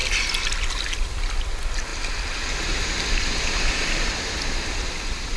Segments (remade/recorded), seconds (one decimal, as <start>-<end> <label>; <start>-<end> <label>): 0.0-5.4 recorded

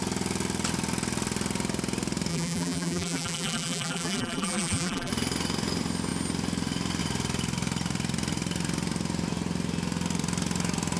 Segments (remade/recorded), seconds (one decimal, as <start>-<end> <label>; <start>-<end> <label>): 0.0-2.3 recorded; 2.3-5.1 remade; 5.1-11.0 recorded

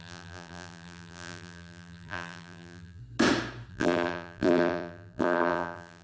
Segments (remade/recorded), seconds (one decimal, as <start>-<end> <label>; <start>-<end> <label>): 0.0-3.0 remade; 3.0-3.7 recorded; 3.7-6.0 remade

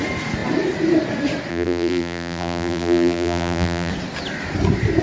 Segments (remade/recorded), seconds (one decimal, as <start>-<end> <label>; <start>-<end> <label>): 0.0-1.5 recorded; 1.5-3.9 remade; 3.9-5.0 recorded